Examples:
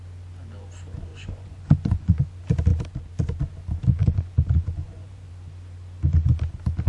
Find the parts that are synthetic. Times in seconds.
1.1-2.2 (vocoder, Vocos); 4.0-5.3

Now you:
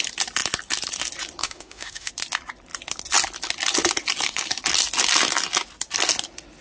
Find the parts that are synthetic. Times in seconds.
1.4-2.1 (autoencoder, DAC-VAE)